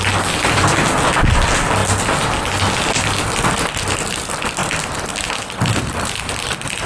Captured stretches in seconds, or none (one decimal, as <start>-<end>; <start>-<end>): 0.0-6.9